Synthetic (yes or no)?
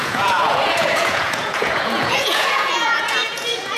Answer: yes